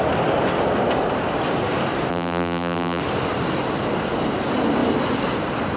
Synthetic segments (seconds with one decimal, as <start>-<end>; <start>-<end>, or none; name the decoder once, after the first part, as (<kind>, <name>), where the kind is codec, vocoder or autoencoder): 2.1-3.0 (vocoder, BigVGAN v2)